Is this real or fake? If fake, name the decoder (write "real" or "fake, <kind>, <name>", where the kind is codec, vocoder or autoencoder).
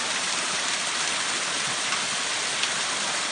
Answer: real